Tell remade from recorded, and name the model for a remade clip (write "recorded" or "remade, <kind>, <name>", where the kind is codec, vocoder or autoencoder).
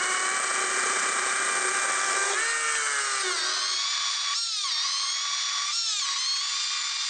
recorded